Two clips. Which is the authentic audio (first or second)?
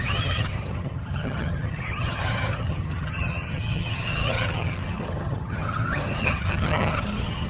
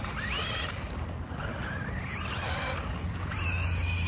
second